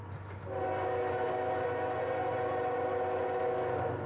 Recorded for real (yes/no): yes